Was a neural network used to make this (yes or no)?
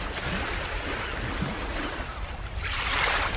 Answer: yes